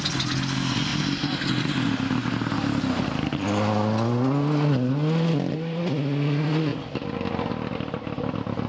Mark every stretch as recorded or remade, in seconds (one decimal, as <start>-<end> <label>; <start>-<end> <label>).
0.0-8.7 recorded